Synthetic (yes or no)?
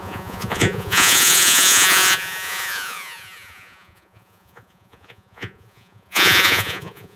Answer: yes